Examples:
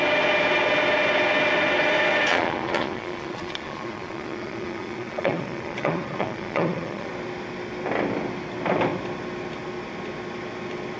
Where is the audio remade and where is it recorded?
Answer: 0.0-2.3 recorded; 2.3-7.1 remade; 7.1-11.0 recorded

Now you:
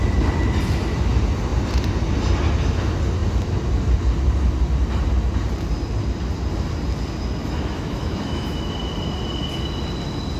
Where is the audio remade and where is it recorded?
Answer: 0.0-7.4 recorded; 7.4-8.7 remade; 8.7-10.4 recorded